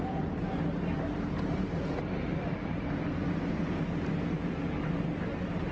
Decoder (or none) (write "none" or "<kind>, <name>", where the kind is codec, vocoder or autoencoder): vocoder, BigVGAN v2